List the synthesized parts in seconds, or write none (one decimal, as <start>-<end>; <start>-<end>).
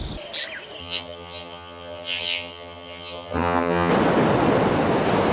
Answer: 0.8-3.9